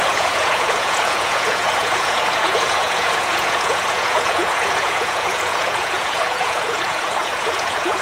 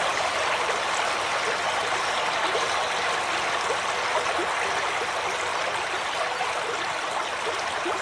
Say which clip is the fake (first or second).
first